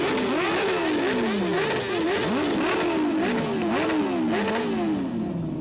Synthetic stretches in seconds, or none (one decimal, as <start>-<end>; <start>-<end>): none